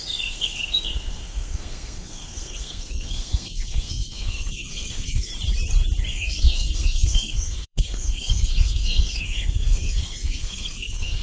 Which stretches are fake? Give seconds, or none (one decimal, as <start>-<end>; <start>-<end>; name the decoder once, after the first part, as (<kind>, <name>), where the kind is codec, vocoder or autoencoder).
0.0-5.3 (codec, SNAC); 6.1-11.2